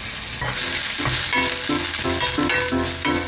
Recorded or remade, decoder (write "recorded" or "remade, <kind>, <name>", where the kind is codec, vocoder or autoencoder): recorded